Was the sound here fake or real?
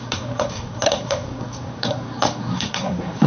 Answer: fake